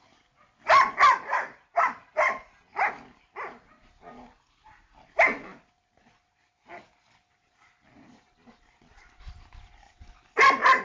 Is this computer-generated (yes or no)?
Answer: no